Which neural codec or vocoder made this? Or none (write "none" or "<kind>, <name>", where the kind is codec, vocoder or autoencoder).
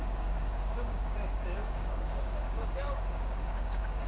codec, DAC